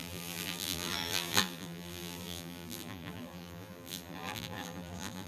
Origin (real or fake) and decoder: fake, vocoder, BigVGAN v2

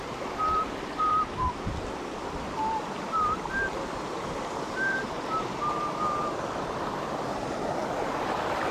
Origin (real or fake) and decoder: fake, vocoder, BigVGAN v2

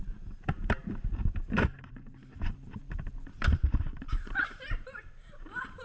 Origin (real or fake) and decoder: fake, vocoder, BigVGAN v2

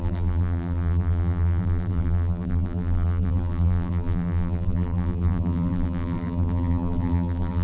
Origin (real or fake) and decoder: fake, vocoder, BigVGAN v2